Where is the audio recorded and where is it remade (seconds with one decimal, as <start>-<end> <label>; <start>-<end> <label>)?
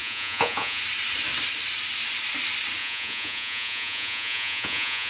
0.0-0.8 remade; 0.8-2.8 recorded; 2.8-5.1 remade